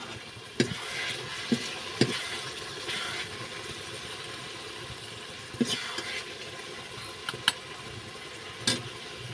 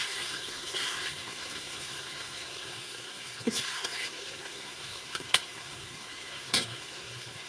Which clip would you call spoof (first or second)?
second